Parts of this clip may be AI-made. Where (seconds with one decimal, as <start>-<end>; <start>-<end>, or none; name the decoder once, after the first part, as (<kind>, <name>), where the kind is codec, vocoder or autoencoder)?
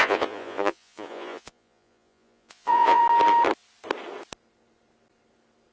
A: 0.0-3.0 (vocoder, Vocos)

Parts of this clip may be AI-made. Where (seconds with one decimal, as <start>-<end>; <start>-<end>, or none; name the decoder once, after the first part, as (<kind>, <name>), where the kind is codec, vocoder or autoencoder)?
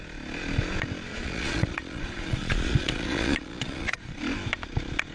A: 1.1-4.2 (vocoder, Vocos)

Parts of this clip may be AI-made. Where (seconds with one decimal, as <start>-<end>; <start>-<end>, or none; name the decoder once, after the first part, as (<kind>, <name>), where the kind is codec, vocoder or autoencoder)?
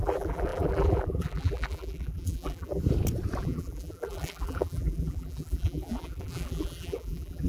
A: 0.0-2.8 (vocoder, BigVGAN v2); 3.4-7.5